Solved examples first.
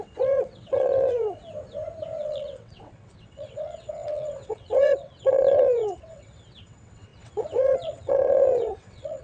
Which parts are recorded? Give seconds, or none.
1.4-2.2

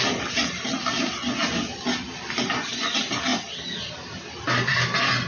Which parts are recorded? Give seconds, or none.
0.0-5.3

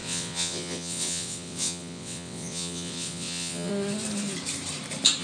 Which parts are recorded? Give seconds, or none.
3.7-5.2

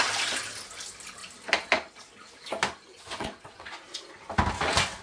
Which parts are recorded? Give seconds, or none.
0.0-2.9; 3.7-5.0